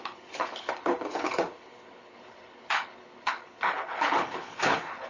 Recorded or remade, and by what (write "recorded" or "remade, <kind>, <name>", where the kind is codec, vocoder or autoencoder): remade, codec, HILCodec